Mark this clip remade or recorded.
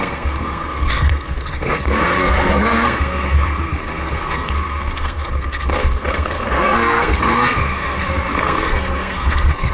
remade